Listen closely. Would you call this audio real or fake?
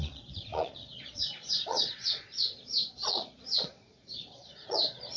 fake